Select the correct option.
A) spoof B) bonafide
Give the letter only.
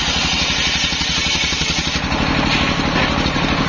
B